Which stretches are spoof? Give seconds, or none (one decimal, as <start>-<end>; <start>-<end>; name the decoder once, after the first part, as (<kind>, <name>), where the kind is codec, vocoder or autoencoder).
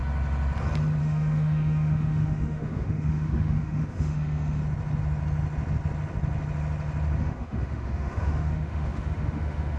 1.0-4.6 (autoencoder, DAC-VAE); 7.2-9.8